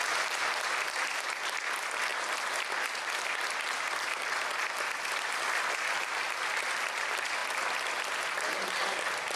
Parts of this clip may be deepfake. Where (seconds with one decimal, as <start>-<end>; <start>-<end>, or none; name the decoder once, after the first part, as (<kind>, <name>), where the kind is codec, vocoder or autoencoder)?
none